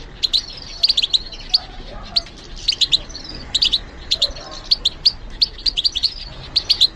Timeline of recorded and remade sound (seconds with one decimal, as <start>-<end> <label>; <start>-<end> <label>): 0.0-3.3 recorded; 3.3-4.3 remade; 4.3-5.6 recorded; 5.6-6.5 remade; 6.5-7.0 recorded